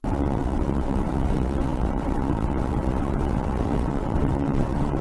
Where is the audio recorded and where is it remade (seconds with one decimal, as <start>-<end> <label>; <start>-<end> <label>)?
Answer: 0.0-5.0 remade